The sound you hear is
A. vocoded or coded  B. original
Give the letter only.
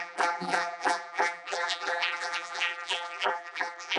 A